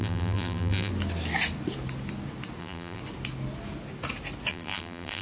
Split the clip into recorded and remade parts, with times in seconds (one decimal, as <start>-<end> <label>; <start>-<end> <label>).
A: 0.0-0.9 remade; 0.9-2.6 recorded; 2.6-3.0 remade; 3.0-4.5 recorded; 4.5-5.2 remade